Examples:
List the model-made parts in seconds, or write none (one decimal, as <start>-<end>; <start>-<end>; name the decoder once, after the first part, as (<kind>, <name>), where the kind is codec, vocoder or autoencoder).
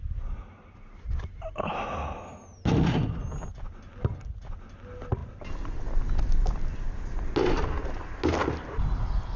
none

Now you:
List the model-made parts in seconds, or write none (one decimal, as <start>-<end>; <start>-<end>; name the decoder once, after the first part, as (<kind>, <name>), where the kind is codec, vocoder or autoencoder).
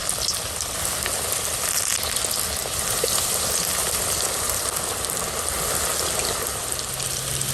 2.6-4.9 (vocoder, BigVGAN v2)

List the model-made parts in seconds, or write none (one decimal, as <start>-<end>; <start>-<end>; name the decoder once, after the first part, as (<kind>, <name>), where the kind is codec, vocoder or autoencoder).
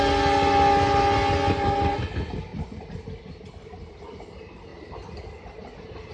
none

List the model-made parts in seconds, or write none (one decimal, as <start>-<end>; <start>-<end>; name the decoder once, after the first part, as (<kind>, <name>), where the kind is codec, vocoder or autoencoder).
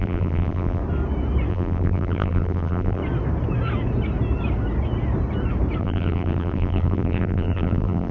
0.0-0.8 (vocoder, BigVGAN v2); 1.5-3.0; 5.8-8.1